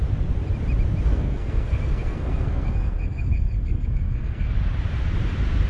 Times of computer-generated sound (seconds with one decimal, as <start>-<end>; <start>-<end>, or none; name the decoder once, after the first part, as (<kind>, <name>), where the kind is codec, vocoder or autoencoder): 1.1-4.5 (codec, SNAC)